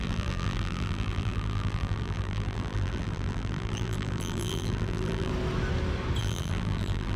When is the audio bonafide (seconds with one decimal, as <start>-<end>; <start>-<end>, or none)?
5.3-6.2